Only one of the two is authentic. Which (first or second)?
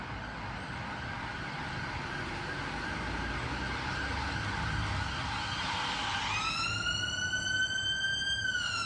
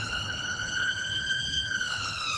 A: first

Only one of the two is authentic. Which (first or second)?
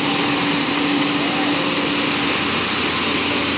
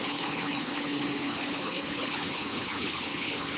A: first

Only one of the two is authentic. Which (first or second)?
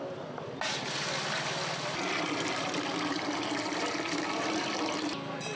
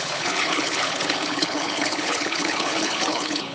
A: first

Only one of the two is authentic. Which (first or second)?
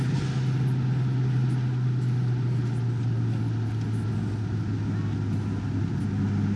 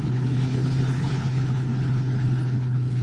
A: first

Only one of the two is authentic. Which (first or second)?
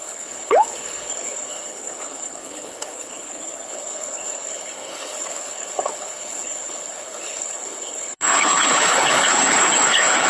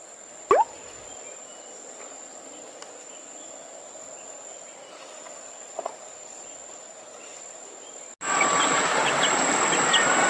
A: second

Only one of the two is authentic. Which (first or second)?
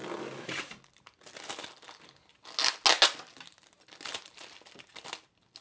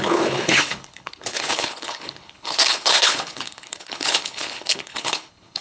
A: first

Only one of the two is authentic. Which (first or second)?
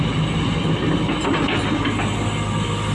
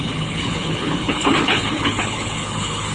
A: first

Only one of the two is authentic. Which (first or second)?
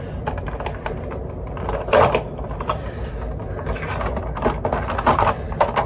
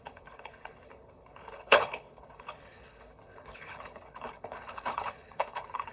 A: first